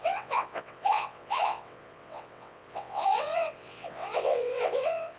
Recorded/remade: remade